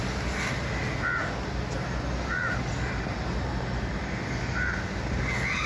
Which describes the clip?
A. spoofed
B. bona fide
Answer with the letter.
B